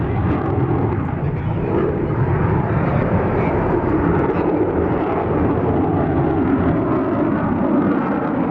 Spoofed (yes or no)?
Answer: no